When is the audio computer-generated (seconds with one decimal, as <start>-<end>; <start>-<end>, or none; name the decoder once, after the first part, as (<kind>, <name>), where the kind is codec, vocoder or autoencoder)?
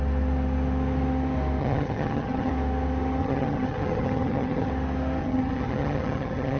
1.6-2.5 (vocoder, HiFi-GAN); 3.2-4.7; 5.2-6.6